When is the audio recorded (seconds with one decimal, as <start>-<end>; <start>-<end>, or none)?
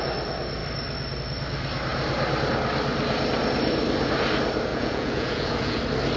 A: 0.0-4.7; 5.8-6.2